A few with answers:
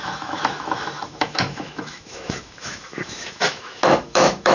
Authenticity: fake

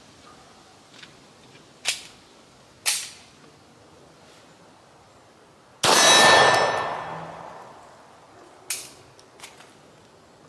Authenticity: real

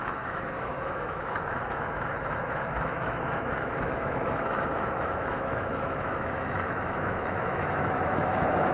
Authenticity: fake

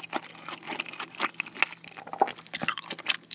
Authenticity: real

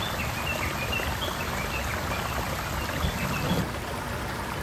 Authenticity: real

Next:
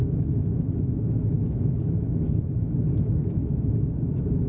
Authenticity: fake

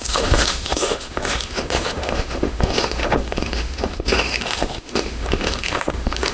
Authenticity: fake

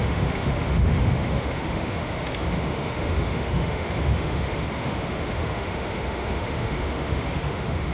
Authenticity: fake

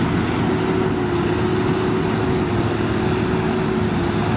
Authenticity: real